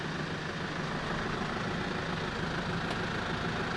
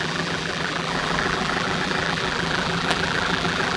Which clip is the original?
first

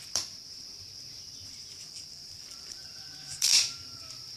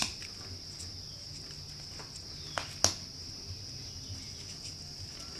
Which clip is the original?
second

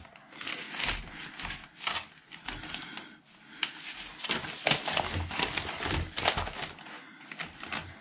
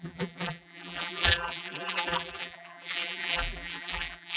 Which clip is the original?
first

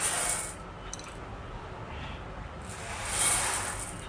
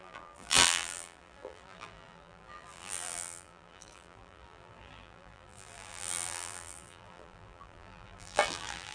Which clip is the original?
first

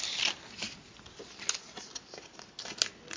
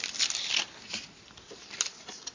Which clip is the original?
first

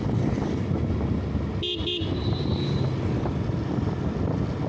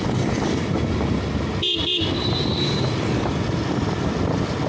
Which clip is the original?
first